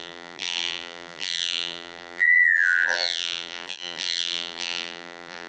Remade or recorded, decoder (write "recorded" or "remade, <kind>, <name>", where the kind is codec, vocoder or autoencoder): remade, vocoder, BigVGAN v2